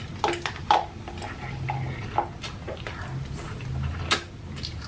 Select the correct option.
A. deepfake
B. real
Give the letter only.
B